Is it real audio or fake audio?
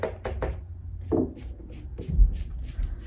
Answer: real